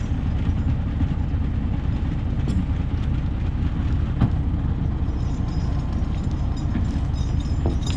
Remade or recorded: recorded